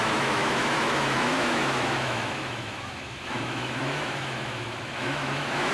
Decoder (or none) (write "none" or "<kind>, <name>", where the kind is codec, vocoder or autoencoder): autoencoder, DAC-VAE